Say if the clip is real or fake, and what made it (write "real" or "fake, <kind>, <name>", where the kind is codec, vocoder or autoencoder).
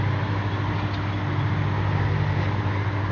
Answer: real